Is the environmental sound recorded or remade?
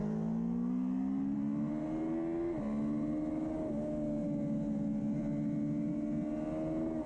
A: recorded